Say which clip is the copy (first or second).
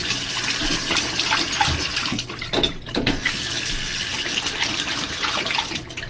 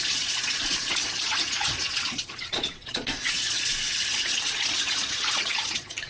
second